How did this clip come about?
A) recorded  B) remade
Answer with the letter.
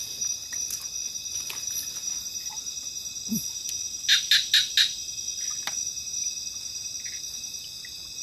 A